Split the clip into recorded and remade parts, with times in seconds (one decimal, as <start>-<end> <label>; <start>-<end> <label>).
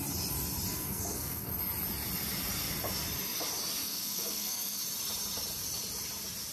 0.0-0.7 recorded; 0.7-1.5 remade; 1.5-3.8 recorded; 3.8-4.8 remade; 4.8-6.5 recorded